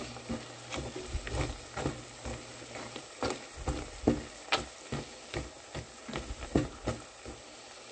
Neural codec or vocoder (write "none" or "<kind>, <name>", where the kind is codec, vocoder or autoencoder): none